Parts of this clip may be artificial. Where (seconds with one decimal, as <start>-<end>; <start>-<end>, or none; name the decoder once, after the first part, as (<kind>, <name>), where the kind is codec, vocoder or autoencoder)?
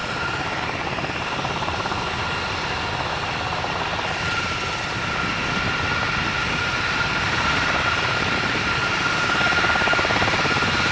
0.0-2.0 (vocoder, BigVGAN v2); 6.4-8.9